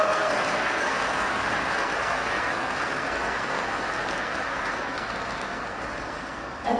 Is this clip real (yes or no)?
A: no